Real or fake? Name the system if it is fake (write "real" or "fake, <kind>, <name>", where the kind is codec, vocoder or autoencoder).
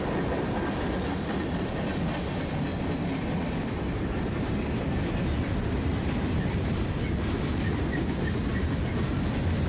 real